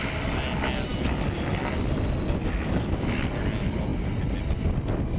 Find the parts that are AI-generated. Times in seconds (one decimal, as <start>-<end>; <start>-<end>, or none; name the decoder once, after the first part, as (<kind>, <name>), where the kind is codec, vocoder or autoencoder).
none